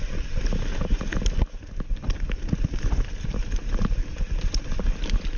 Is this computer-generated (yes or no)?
no